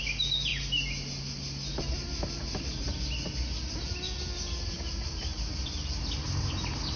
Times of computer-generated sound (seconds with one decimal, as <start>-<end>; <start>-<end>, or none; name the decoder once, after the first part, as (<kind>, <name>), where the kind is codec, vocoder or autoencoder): none